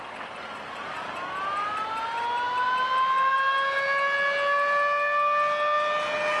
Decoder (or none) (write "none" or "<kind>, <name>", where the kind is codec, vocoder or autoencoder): none